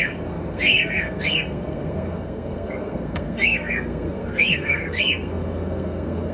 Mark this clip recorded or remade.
remade